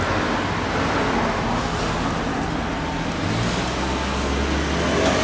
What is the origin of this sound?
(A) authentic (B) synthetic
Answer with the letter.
A